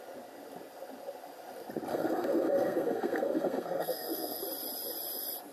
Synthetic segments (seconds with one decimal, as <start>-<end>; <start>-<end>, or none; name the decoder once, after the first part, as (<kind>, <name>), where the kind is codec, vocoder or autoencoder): 1.9-4.4 (codec, SNAC)